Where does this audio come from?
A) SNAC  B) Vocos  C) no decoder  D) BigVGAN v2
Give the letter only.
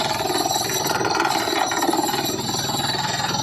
C